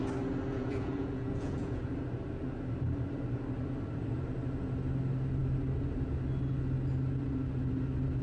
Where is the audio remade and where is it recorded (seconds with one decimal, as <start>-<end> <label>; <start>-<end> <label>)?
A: 0.0-0.5 recorded; 0.5-1.8 remade; 1.8-8.2 recorded